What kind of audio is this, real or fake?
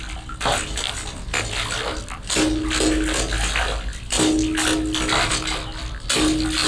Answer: real